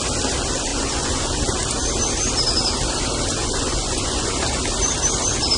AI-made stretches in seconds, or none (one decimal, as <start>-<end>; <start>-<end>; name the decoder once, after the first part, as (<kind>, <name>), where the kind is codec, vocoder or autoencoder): 0.7-1.4 (vocoder, Vocos); 3.4-4.3